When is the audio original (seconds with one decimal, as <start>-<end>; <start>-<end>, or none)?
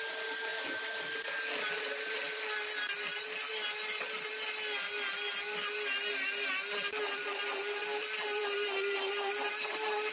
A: 0.0-10.1